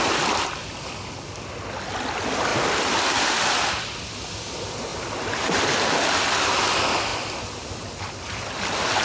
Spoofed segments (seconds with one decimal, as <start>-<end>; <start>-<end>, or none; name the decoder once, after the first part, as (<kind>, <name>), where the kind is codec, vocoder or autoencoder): none